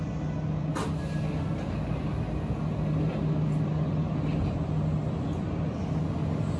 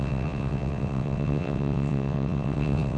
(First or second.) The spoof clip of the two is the second